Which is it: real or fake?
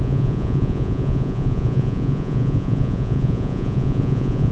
fake